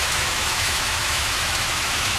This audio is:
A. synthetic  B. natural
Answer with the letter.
A